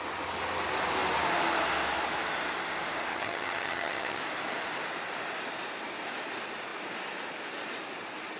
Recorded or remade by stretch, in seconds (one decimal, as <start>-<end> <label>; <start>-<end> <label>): 0.0-3.1 recorded; 3.1-4.2 remade; 4.2-8.4 recorded